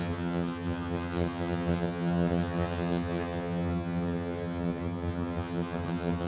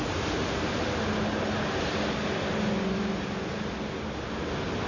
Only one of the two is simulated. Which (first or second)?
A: first